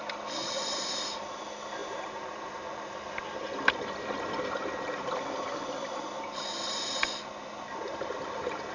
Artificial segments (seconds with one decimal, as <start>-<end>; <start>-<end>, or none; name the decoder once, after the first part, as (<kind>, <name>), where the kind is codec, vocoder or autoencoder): none